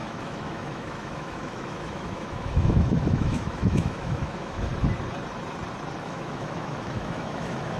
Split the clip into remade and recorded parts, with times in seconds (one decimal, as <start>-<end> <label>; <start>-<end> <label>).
0.0-4.7 remade; 4.7-6.0 recorded; 6.0-7.8 remade